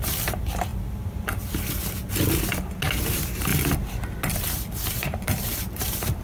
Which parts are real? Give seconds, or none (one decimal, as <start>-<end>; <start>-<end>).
0.7-3.0; 3.5-4.9